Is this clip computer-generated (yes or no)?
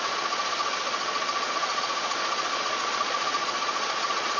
yes